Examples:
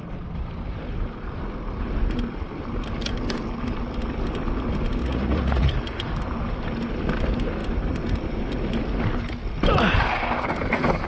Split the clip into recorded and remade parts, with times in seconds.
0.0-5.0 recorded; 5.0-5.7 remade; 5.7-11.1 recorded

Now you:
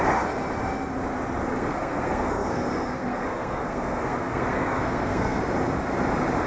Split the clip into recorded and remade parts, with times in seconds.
0.0-1.5 recorded; 1.5-5.4 remade; 5.4-6.5 recorded

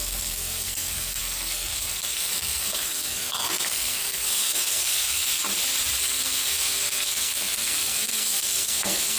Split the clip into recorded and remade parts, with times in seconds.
0.0-5.4 remade; 5.4-6.0 recorded; 6.0-9.2 remade

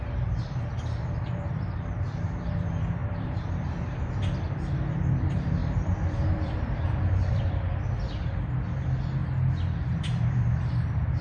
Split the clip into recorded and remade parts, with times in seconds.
0.0-9.2 remade; 9.2-10.1 recorded; 10.1-11.2 remade

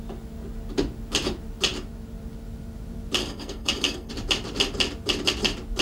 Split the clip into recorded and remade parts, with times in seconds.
0.0-3.2 recorded; 3.2-4.1 remade; 4.1-5.8 recorded

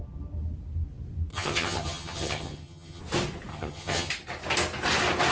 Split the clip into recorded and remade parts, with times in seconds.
0.0-1.3 recorded; 1.3-3.0 remade; 3.0-3.5 recorded; 3.5-4.1 remade; 4.1-5.3 recorded

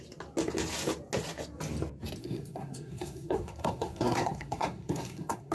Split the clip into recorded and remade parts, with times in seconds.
0.0-2.2 recorded; 2.2-5.5 remade

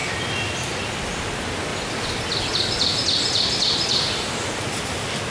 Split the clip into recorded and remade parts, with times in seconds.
0.0-0.8 remade; 0.8-1.7 recorded; 1.7-2.5 remade; 2.5-5.3 recorded